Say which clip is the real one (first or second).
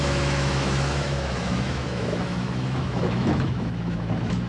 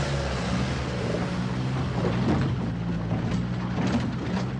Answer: second